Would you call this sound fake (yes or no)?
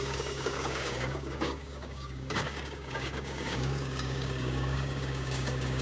yes